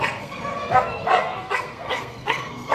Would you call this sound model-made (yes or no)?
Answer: yes